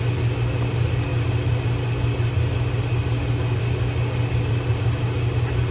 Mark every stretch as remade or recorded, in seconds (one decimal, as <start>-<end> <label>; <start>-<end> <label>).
0.0-5.7 recorded